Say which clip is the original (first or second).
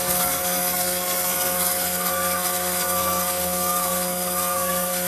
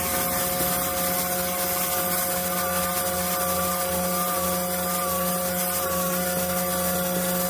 second